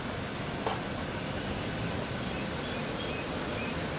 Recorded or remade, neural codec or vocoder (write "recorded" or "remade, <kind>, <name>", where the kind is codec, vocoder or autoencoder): recorded